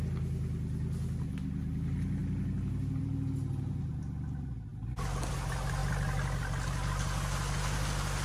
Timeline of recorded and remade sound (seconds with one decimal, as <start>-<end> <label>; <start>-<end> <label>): 0.0-8.2 recorded